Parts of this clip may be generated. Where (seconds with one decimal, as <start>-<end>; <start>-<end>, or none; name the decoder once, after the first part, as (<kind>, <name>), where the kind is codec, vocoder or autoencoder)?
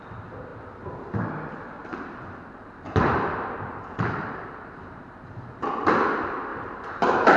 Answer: 1.8-5.5 (vocoder, BigVGAN v2); 6.5-7.4